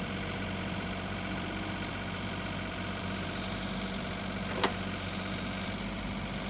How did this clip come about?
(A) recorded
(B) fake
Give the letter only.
B